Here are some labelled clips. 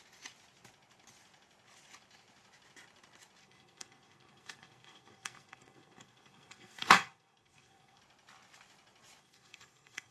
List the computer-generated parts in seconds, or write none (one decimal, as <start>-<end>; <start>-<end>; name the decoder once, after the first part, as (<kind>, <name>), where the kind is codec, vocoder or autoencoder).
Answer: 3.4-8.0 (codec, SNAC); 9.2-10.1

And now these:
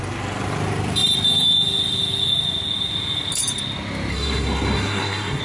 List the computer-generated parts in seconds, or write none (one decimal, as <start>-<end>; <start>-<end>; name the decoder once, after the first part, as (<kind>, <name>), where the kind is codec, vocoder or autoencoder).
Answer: 4.1-5.4 (codec, SNAC)

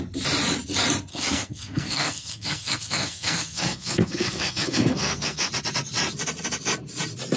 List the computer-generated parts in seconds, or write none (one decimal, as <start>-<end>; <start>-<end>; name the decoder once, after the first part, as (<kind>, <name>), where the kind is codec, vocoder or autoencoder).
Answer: 1.1-5.5 (codec, SNAC)

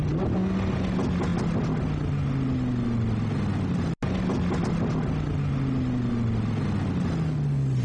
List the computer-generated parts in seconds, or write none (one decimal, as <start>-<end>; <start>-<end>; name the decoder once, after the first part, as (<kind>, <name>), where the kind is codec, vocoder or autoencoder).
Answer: none